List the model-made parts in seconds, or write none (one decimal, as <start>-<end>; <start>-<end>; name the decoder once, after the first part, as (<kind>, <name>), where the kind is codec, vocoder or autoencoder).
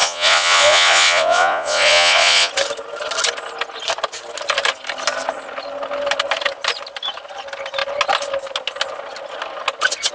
0.0-2.5 (vocoder, Vocos)